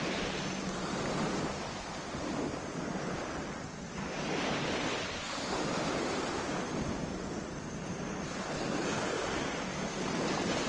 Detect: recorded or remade recorded